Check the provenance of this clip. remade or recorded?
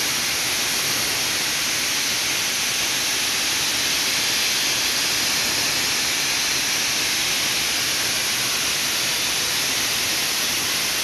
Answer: recorded